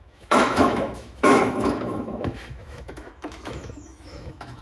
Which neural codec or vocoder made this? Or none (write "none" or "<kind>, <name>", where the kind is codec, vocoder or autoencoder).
autoencoder, DAC-VAE